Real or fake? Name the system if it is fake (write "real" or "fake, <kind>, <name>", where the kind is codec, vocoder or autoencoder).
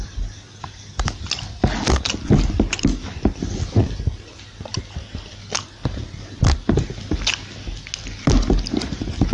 real